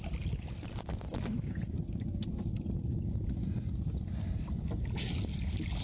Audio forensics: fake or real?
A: real